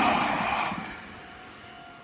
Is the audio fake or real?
real